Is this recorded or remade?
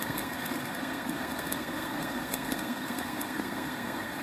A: remade